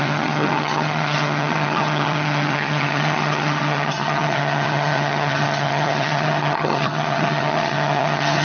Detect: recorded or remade remade